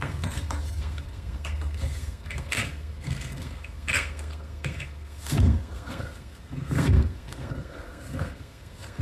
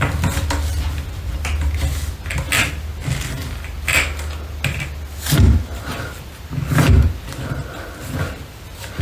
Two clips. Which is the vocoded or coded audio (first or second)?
first